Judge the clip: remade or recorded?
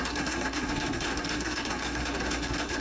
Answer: remade